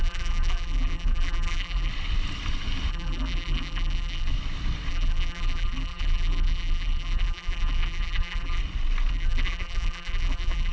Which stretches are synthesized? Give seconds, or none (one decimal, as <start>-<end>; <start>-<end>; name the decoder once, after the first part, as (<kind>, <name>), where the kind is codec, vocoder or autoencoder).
0.0-1.9 (vocoder, BigVGAN v2); 2.9-4.3; 4.9-8.6; 9.1-10.7